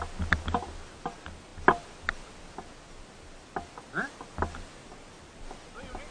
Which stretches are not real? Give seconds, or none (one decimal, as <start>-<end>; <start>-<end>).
none